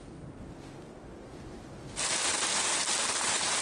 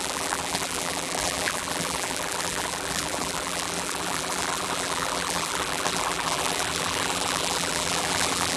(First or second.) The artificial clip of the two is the second